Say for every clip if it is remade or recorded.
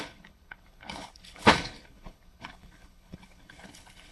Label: remade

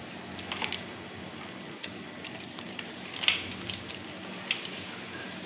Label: recorded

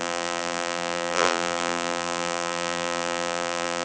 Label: remade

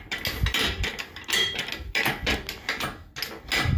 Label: recorded